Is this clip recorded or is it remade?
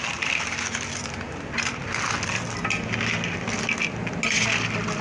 recorded